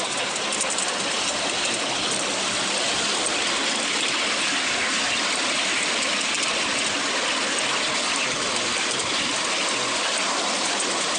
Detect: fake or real real